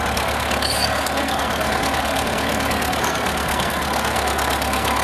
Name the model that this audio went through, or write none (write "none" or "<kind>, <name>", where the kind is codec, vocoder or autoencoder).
codec, SNAC